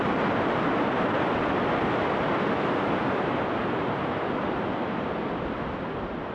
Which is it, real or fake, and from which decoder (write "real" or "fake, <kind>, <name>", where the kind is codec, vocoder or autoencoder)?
real